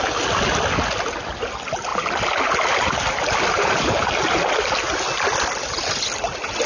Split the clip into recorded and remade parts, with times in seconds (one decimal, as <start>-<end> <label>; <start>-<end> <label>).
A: 0.0-6.7 recorded